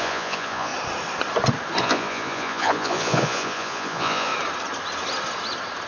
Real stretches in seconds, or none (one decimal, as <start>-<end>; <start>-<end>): 0.7-1.8; 4.3-5.9